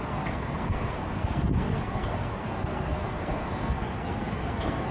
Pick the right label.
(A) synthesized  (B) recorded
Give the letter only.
A